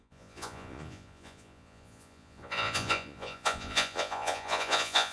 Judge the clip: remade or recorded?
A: remade